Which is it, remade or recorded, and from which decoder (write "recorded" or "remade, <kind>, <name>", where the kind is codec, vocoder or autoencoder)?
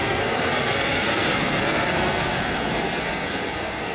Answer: remade, codec, SNAC